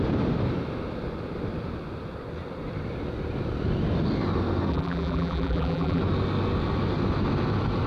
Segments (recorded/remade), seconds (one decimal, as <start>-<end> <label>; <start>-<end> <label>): 0.0-4.7 recorded; 4.7-6.0 remade; 6.0-7.9 recorded